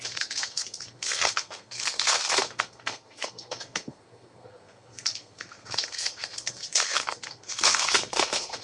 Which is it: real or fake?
fake